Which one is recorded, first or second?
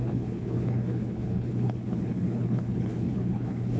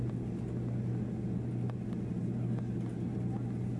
second